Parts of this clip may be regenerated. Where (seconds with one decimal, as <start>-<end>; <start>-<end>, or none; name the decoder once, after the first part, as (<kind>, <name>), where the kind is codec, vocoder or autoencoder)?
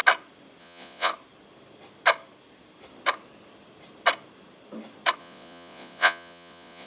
0.6-1.1 (vocoder, Vocos); 5.2-6.9